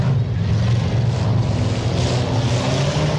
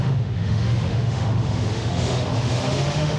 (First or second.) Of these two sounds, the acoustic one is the first